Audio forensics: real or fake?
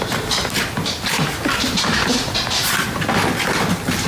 real